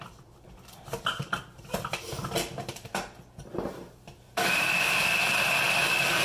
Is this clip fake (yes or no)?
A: yes